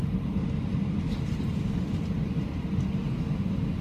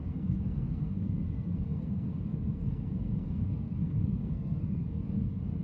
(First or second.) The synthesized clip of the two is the second